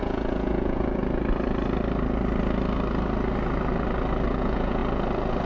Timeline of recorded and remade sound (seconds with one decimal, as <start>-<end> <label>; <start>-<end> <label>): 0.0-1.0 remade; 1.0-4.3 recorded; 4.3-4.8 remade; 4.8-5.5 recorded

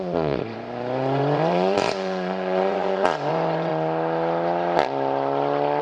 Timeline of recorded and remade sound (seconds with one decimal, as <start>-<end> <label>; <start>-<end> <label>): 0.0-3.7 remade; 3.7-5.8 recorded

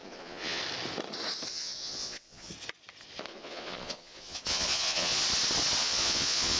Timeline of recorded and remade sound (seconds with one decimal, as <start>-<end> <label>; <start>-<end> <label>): 0.0-0.6 remade; 0.6-1.5 recorded; 1.5-2.5 remade; 2.5-3.3 recorded; 3.3-5.2 remade; 5.2-5.8 recorded; 5.8-6.6 remade